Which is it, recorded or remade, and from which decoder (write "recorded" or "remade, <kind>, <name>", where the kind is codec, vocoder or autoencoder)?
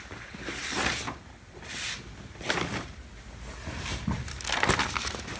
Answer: recorded